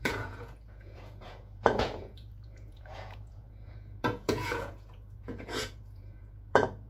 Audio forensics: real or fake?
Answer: fake